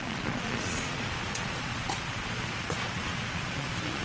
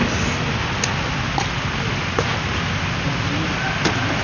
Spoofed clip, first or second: first